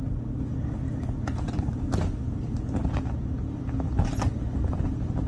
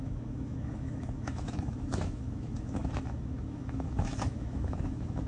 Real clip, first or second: first